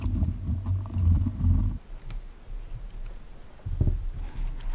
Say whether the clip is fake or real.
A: real